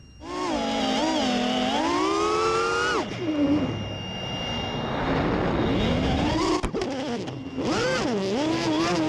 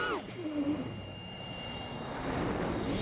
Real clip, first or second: first